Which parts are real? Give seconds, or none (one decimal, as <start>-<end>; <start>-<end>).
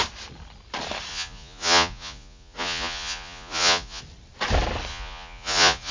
0.0-1.1; 4.0-4.9